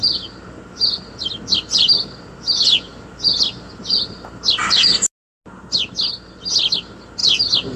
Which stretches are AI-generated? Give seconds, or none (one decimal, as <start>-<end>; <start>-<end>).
none